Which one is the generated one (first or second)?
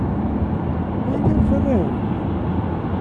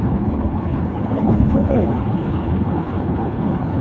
second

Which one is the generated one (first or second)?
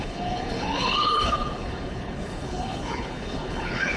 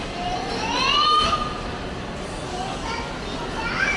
first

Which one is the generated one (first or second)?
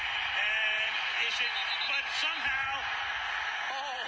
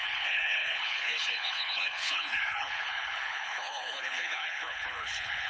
second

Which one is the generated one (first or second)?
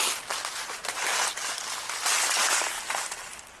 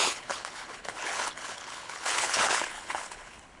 second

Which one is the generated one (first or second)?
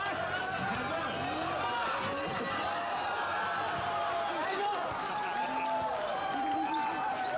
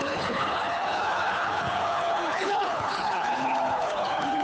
second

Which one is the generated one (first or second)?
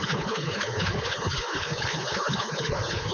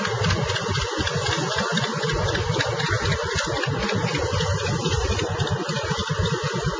first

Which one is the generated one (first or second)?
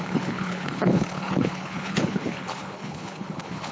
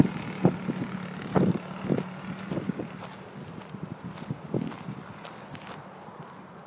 first